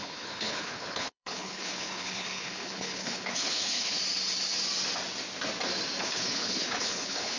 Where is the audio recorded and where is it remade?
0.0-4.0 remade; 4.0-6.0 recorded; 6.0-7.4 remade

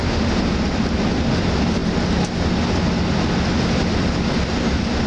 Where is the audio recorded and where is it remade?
0.0-5.1 recorded

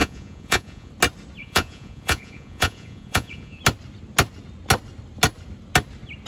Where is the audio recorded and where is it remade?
0.0-0.9 remade; 0.9-1.4 recorded; 1.4-3.6 remade; 3.6-6.3 recorded

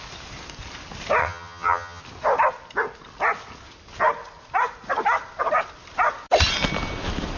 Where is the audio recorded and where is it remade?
0.0-1.2 recorded; 1.2-2.0 remade; 2.0-7.4 recorded

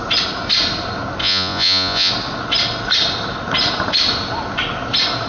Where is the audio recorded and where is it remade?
0.0-1.2 recorded; 1.2-2.1 remade; 2.1-5.3 recorded

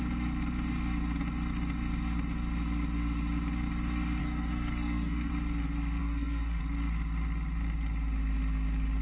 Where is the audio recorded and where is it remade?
0.0-4.2 recorded; 4.2-5.3 remade; 5.3-6.0 recorded; 6.0-6.6 remade; 6.6-9.0 recorded